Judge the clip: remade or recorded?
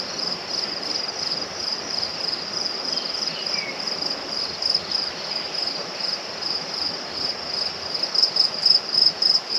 recorded